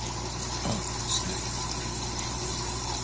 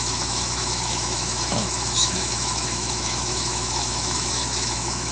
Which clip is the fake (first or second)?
second